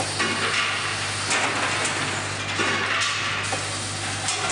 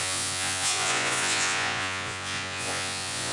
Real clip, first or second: first